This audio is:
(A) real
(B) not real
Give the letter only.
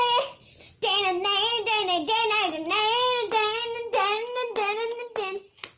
A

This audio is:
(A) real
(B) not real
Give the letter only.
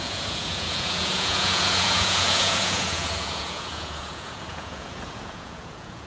B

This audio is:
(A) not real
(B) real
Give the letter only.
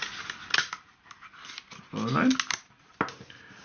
B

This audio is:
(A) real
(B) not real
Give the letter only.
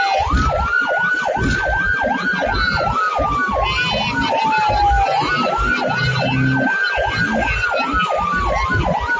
A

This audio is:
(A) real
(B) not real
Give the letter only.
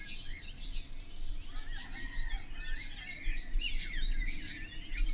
A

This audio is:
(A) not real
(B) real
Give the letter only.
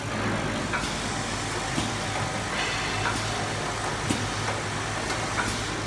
B